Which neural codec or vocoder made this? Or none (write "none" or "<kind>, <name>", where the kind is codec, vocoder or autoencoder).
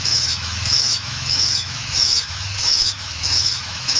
autoencoder, DAC-VAE